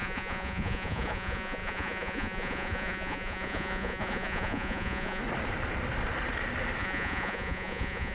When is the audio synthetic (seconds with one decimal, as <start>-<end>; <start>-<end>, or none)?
0.0-5.2; 6.8-8.1